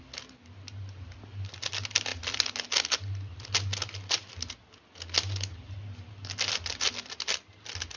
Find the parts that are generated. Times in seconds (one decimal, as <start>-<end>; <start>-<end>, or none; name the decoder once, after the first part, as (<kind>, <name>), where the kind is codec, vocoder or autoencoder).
none